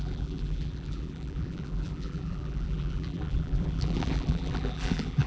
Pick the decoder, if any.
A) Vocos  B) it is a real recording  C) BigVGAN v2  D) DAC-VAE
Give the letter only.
C